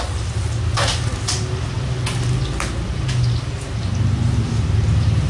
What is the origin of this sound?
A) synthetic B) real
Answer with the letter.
B